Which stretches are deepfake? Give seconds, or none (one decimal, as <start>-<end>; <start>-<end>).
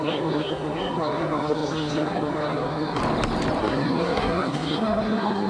0.0-3.0; 3.6-5.5